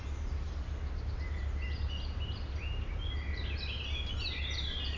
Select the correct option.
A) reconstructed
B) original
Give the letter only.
B